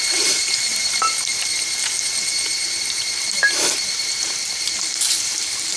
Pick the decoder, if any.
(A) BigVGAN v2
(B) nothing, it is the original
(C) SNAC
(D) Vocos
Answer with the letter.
A